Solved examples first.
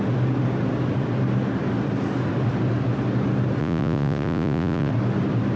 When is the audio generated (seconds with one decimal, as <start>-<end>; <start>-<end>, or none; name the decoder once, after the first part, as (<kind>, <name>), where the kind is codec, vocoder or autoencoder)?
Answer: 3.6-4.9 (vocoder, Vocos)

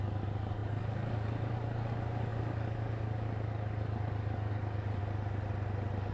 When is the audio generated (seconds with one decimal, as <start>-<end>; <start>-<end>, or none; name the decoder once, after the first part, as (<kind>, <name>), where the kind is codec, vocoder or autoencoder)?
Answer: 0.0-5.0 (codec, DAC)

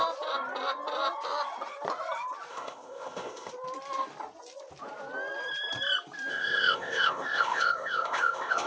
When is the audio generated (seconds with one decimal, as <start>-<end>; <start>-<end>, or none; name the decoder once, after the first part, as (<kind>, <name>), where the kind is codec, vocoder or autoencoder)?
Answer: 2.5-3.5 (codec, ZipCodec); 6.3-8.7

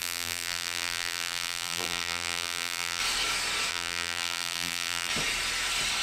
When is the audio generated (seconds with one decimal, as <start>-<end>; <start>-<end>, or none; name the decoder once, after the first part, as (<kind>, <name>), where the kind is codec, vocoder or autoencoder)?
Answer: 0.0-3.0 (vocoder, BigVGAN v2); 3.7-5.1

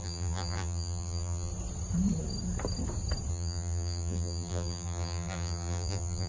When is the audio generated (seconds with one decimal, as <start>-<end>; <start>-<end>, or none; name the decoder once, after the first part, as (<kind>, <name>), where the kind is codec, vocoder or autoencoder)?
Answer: 0.0-1.5 (vocoder, BigVGAN v2); 3.3-6.3